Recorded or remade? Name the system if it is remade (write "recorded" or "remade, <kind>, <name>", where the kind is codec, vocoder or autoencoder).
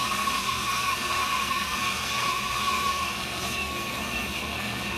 remade, codec, SNAC